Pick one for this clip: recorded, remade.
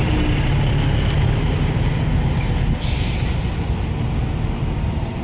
recorded